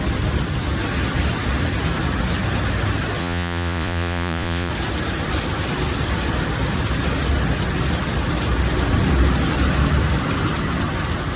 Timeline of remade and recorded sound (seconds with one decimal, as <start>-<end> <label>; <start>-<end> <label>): 0.0-3.2 recorded; 3.2-4.7 remade; 4.7-11.4 recorded